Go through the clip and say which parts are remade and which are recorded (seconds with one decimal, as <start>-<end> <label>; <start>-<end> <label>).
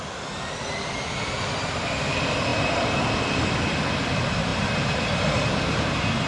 0.0-6.3 recorded